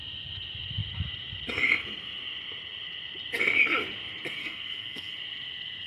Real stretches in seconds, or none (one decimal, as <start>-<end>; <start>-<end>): 0.0-4.4; 5.1-5.9

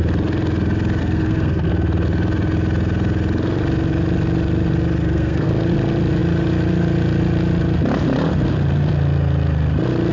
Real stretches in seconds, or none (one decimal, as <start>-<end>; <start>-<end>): 0.0-1.0; 1.7-5.0; 5.5-10.1

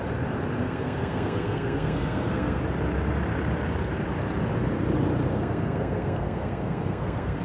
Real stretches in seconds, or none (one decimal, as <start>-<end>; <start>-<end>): 0.0-0.6; 2.6-5.3

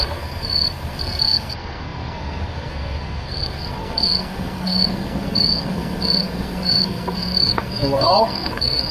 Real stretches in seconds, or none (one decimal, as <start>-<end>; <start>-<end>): none

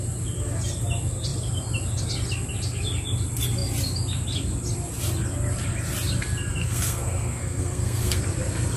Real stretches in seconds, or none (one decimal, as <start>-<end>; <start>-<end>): 0.0-6.6; 8.2-8.8

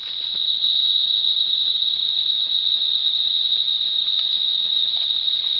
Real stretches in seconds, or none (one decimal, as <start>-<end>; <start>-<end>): 0.0-5.6